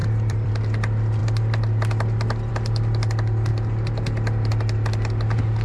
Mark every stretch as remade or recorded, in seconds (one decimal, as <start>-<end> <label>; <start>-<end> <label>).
0.0-0.5 remade; 0.5-5.6 recorded